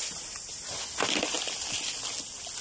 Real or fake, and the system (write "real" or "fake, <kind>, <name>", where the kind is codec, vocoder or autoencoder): real